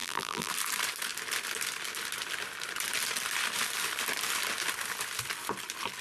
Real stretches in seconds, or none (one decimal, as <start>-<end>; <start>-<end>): 0.5-6.0

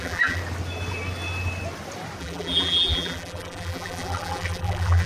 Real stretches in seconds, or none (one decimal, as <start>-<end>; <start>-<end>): 0.4-2.2

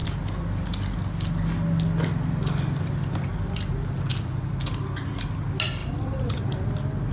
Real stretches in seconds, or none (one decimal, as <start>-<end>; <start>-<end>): 0.0-4.1; 4.8-5.8; 6.4-7.1

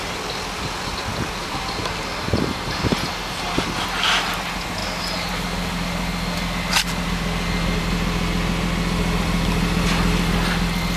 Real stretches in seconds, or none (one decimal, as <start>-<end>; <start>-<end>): 0.0-1.4; 2.0-11.0

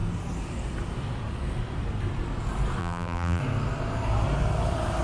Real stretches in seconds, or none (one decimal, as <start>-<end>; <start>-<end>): 0.0-2.8; 3.4-5.0

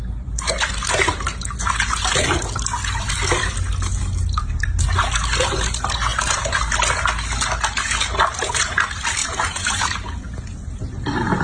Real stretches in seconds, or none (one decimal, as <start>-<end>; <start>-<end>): 0.0-6.1; 6.6-9.2; 9.8-11.4

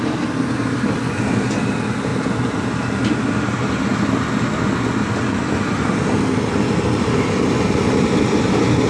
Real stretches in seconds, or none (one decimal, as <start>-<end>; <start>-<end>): 0.0-8.9

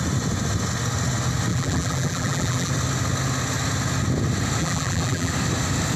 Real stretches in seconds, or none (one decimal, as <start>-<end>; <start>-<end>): 0.0-1.5; 2.7-4.6; 5.3-6.0